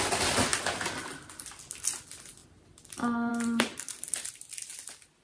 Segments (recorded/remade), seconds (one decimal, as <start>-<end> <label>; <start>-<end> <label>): 0.0-3.7 recorded; 3.7-4.3 remade; 4.3-5.2 recorded